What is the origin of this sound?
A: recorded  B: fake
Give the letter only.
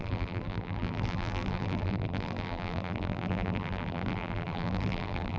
B